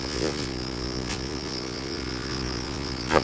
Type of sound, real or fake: fake